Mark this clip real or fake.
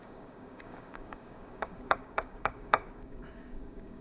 fake